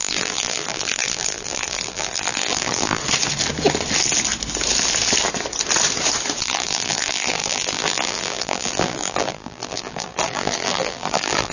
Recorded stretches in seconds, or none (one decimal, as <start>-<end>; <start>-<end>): 3.0-6.4